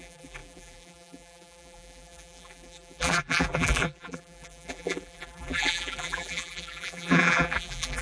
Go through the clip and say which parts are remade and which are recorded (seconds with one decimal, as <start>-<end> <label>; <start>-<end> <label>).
0.0-8.0 remade